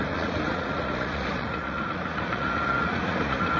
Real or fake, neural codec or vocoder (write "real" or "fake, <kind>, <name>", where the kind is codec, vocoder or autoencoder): fake, vocoder, Vocos